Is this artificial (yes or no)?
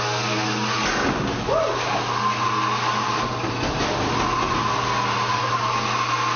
no